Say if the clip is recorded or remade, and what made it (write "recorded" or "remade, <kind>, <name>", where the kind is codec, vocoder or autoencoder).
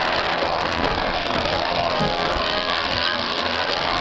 remade, codec, SNAC